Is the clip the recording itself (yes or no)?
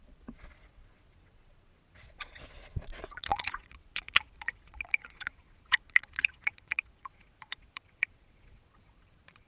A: no